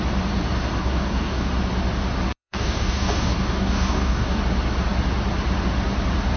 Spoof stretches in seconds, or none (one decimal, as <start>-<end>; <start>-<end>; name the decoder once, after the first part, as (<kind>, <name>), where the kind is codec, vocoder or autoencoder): 0.8-1.5 (codec, DAC); 2.3-4.4